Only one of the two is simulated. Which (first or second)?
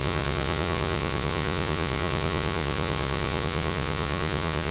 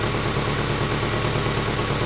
first